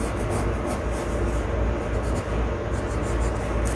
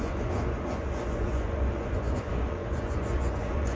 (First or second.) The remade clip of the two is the second